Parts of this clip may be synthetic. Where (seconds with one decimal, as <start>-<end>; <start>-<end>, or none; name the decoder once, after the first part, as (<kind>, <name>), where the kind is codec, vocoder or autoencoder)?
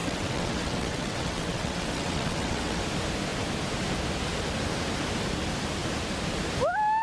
0.0-2.8 (vocoder, WaveNeXt)